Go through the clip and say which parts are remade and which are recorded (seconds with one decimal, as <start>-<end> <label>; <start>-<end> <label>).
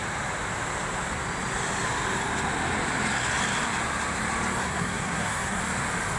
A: 0.0-4.6 recorded; 4.6-5.6 remade; 5.6-6.2 recorded